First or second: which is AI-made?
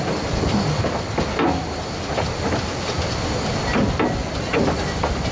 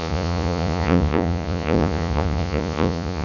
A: second